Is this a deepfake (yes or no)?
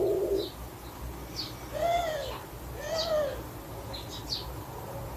no